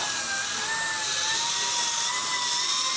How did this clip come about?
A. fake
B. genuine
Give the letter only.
B